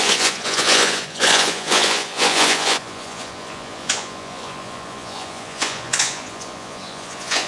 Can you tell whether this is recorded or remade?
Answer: remade